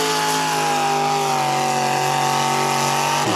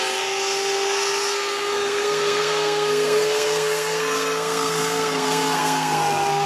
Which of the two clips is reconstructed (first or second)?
second